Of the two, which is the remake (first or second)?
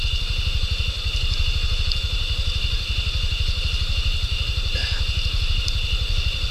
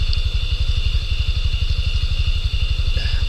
first